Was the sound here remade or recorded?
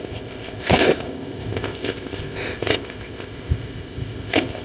remade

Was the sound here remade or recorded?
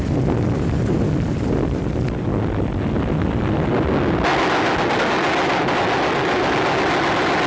recorded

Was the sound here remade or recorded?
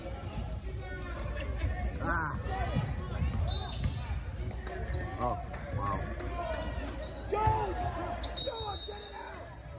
recorded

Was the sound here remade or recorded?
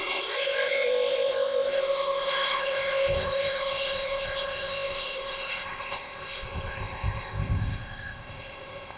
remade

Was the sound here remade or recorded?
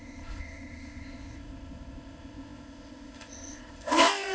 remade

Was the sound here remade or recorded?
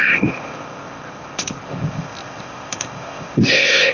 remade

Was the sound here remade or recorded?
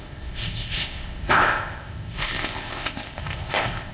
remade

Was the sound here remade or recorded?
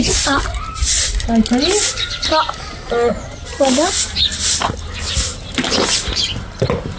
recorded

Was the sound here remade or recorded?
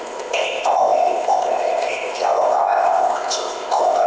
remade